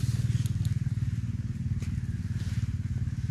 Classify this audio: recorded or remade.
recorded